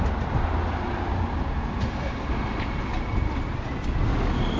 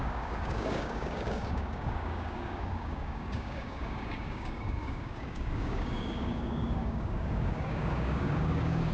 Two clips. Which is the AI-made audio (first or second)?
second